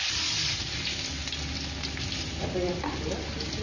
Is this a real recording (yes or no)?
yes